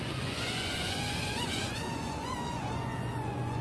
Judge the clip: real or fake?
fake